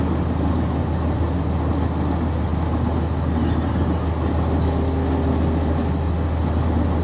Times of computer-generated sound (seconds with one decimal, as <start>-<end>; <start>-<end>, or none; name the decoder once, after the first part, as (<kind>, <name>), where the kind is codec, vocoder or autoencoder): none